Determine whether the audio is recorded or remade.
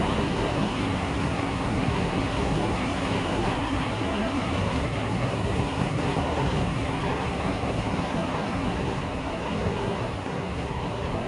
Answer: remade